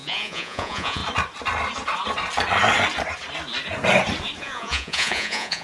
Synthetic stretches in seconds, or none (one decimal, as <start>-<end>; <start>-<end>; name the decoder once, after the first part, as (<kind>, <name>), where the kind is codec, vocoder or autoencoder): 0.0-1.0 (vocoder, Vocos); 4.4-5.6